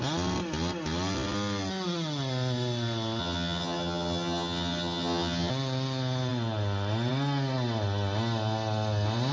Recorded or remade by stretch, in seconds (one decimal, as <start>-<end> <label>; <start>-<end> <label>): 0.0-3.2 recorded; 3.2-5.5 remade; 5.5-9.3 recorded